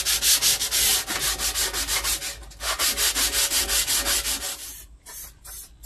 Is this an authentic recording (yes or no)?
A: yes